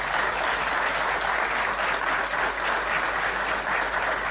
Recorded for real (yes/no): yes